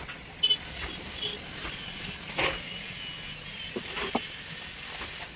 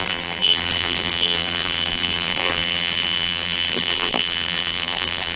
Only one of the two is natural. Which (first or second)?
first